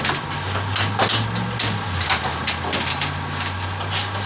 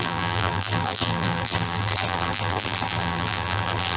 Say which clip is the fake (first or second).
second